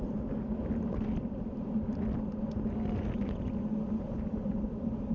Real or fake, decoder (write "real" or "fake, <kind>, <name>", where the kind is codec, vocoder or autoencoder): real